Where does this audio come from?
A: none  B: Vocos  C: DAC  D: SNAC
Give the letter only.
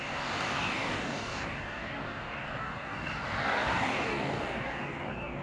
C